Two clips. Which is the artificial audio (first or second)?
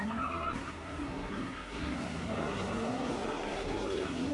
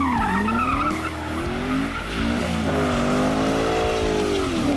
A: first